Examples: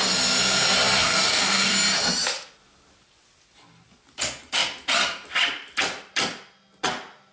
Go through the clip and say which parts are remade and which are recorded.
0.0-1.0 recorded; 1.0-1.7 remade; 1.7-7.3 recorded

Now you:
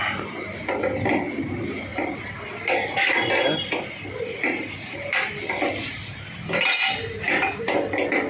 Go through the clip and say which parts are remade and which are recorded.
0.0-8.3 recorded

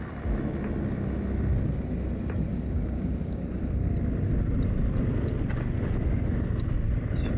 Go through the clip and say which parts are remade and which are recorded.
0.0-2.5 recorded; 2.5-3.6 remade; 3.6-7.4 recorded

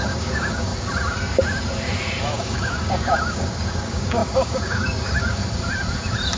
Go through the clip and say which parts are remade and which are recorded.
0.0-0.7 remade; 0.7-2.2 recorded; 2.2-5.4 remade; 5.4-6.4 recorded

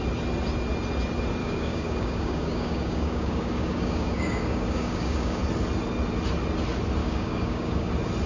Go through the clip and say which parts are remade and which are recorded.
0.0-1.4 recorded; 1.4-5.4 remade; 5.4-7.0 recorded; 7.0-7.9 remade; 7.9-8.3 recorded

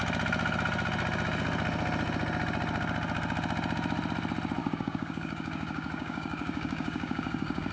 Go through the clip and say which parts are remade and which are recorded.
0.0-4.6 recorded; 4.6-7.7 remade

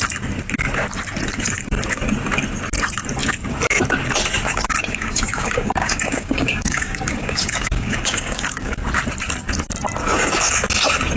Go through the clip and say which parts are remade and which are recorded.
0.0-4.5 recorded; 4.5-8.8 remade; 8.8-11.2 recorded